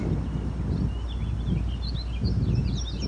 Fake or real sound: real